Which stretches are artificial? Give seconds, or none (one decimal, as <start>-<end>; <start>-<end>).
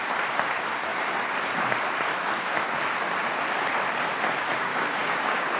4.7-5.6